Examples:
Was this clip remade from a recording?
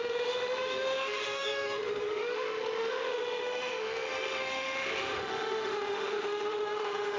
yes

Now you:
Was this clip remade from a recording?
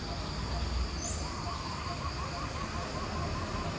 no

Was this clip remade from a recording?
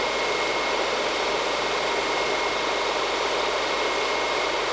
no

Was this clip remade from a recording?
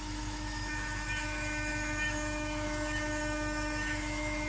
yes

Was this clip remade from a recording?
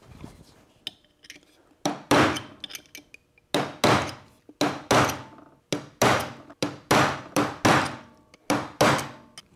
no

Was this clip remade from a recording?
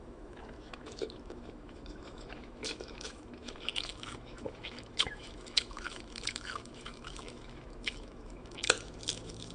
yes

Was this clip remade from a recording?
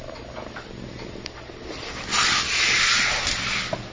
no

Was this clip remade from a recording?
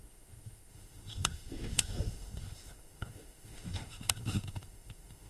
yes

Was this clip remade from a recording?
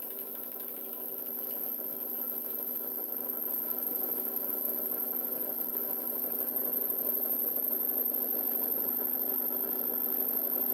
yes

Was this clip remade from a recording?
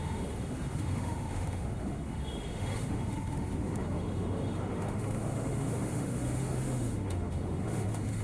yes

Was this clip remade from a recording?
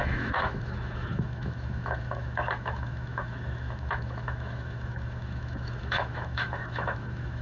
yes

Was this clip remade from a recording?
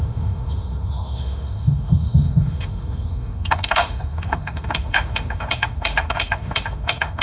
yes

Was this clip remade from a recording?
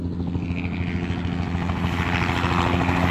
no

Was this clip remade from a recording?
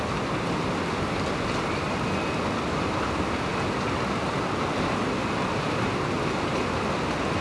no